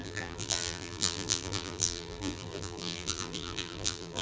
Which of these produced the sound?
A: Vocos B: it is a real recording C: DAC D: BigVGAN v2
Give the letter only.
D